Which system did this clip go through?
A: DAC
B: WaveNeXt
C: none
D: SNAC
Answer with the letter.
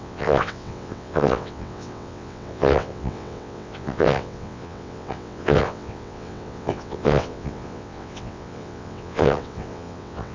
B